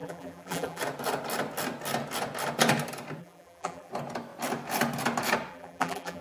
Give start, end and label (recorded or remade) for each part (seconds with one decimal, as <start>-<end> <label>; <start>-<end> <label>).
0.0-0.8 remade; 0.8-3.2 recorded; 3.2-3.9 remade; 3.9-5.5 recorded; 5.5-6.2 remade